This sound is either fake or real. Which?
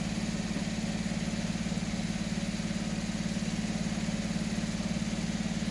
real